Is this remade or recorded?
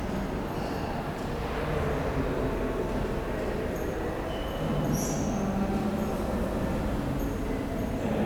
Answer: recorded